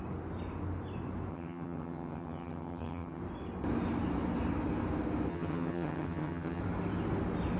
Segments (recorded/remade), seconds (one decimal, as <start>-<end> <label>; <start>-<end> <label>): 0.0-1.3 recorded; 1.3-3.2 remade; 3.2-5.3 recorded; 5.3-6.6 remade; 6.6-7.6 recorded